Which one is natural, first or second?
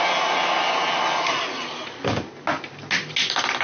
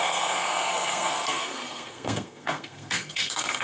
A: first